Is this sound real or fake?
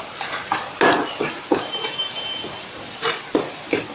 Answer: real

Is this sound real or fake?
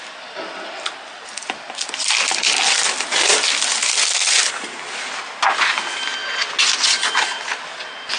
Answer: real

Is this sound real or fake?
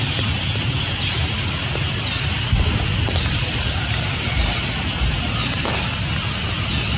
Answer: fake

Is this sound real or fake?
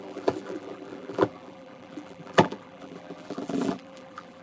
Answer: fake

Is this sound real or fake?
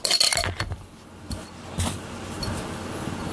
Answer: real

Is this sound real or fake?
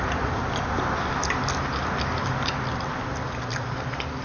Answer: real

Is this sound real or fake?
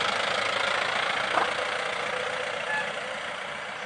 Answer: real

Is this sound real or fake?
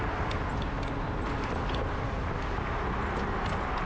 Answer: real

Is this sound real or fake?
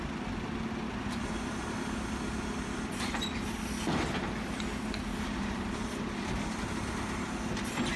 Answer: real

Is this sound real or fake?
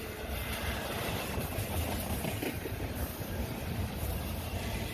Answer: fake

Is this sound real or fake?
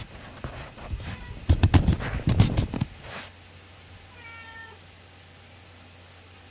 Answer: real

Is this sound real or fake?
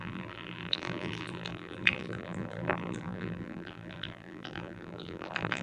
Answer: fake